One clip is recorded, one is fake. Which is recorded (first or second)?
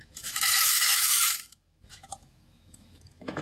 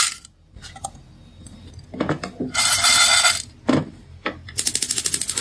second